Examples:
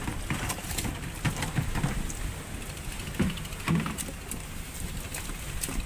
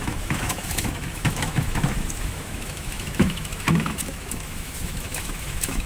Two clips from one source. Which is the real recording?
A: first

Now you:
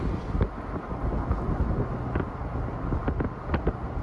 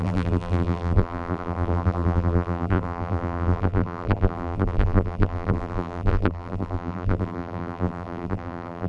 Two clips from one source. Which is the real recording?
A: first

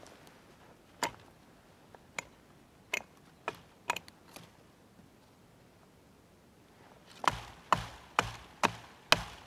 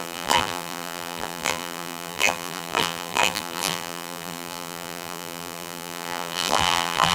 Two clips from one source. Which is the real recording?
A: first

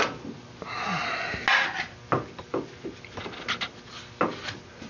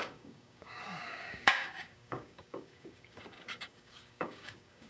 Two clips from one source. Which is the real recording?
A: first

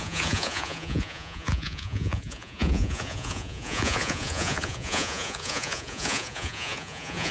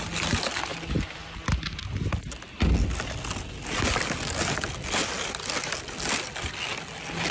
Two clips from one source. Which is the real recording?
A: second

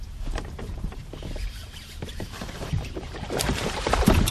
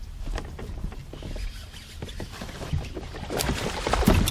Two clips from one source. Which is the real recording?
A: second